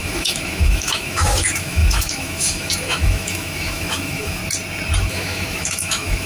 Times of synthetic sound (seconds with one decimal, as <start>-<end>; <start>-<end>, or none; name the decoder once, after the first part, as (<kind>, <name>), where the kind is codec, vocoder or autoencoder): 0.0-4.4 (autoencoder, DAC-VAE); 5.1-6.3